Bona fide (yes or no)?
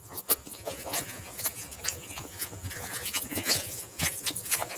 no